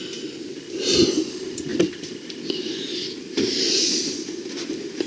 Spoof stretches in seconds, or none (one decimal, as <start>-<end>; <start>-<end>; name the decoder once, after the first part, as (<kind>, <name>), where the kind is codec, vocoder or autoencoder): 1.7-4.2 (vocoder, BigVGAN v2)